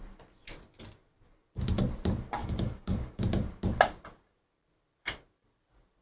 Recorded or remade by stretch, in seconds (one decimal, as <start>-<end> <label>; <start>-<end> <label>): 0.0-2.4 recorded; 2.4-3.2 remade; 3.2-6.0 recorded